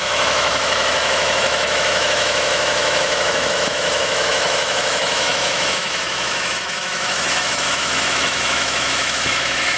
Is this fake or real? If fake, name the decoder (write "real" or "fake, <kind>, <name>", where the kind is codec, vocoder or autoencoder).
fake, autoencoder, DAC-VAE